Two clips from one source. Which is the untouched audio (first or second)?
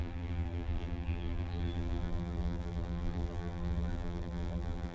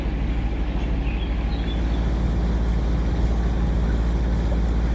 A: second